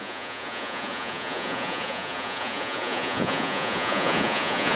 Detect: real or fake fake